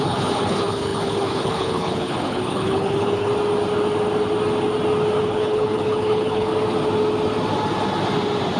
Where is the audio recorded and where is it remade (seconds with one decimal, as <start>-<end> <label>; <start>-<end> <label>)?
0.0-3.3 remade; 3.3-5.2 recorded; 5.2-6.5 remade; 6.5-8.6 recorded